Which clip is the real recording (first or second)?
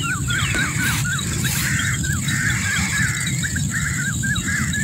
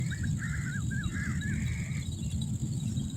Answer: second